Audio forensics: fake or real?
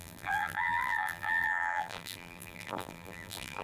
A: fake